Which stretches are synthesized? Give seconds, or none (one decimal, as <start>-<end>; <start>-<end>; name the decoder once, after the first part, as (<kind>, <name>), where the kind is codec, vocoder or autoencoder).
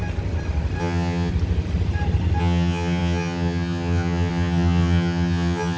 0.8-1.3 (vocoder, HiFi-GAN); 2.4-5.8